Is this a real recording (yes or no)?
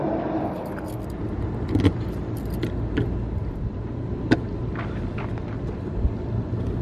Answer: yes